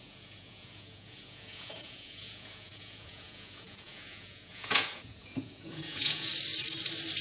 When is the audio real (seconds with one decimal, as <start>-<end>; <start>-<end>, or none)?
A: 6.3-7.2

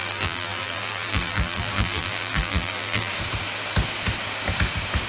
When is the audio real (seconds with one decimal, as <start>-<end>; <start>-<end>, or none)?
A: 3.1-5.1

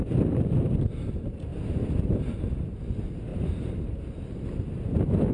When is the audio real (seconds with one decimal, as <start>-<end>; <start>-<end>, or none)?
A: 0.0-3.3; 4.0-5.3

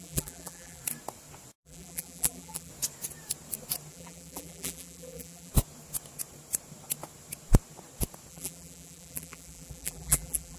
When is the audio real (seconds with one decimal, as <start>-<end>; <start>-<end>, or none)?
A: 0.8-1.6; 2.7-3.9; 5.5-8.3

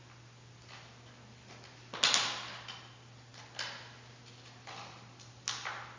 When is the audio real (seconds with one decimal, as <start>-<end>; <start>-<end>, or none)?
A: 0.0-6.0

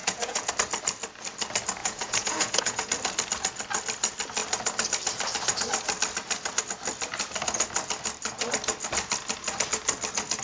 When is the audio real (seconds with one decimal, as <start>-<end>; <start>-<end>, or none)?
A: 0.5-1.8; 2.9-10.4

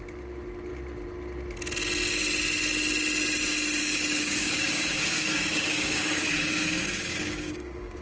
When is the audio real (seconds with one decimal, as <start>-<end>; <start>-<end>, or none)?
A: 0.0-3.8